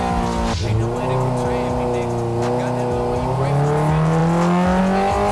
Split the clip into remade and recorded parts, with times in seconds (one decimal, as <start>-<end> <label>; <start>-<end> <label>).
0.0-5.3 recorded